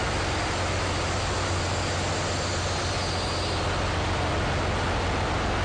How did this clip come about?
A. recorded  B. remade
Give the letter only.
A